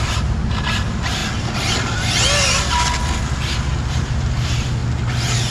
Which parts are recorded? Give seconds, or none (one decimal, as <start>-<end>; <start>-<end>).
1.2-3.9; 4.8-5.5